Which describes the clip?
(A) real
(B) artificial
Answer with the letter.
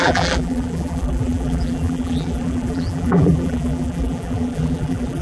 B